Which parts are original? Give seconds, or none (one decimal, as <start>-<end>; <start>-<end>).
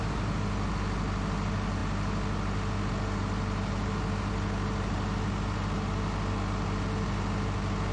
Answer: 0.0-7.9